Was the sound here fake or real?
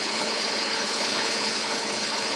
fake